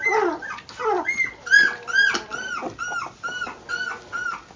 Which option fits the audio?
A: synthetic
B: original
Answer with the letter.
B